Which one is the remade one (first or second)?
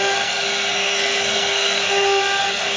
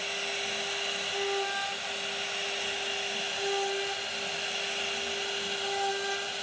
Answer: first